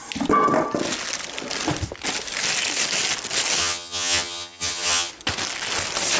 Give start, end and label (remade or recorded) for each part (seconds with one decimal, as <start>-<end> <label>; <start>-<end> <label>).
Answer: 0.0-3.6 recorded; 3.6-5.1 remade; 5.1-6.2 recorded